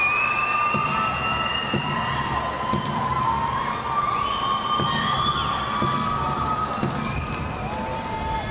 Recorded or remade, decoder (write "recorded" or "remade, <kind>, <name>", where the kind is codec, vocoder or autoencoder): recorded